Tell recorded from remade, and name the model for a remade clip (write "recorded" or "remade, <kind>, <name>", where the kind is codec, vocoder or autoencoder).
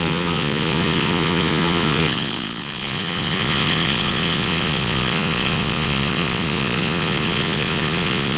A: remade, vocoder, Vocos